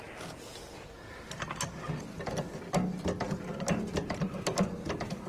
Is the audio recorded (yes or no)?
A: yes